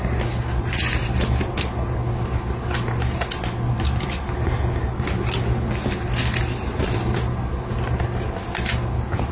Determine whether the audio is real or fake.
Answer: real